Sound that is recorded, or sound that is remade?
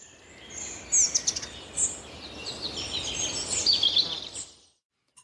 recorded